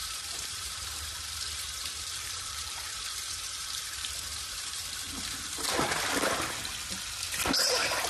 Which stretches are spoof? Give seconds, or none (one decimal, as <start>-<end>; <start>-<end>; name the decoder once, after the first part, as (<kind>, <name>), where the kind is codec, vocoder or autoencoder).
0.0-4.9 (vocoder, BigVGAN v2)